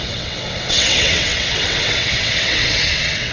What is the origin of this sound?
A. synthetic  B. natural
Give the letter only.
A